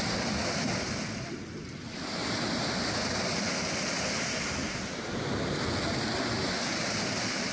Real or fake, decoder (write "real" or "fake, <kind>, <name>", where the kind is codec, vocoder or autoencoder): real